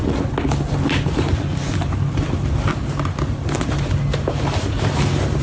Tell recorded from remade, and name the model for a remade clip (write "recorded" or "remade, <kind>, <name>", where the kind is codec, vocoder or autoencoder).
recorded